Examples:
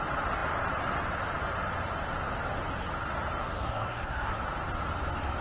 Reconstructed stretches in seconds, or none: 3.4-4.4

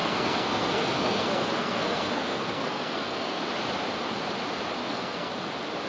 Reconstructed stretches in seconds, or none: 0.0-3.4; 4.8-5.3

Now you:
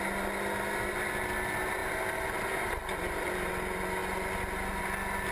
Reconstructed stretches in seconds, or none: none

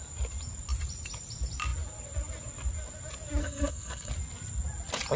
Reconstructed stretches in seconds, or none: 3.4-4.1